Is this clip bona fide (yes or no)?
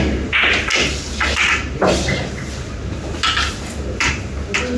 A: yes